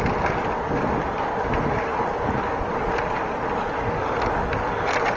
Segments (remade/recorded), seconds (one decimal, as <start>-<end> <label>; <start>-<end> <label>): 0.0-5.2 recorded